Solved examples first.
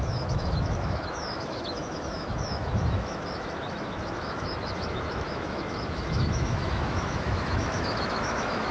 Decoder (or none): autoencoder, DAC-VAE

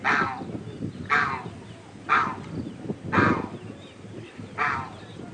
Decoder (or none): none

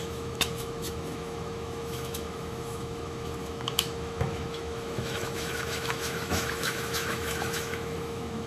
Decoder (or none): autoencoder, DAC-VAE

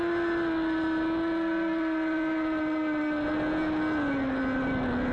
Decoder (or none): none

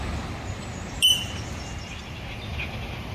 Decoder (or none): none